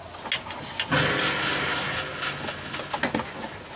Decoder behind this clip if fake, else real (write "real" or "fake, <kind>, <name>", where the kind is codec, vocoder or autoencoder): real